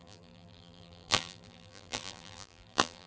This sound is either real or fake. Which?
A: fake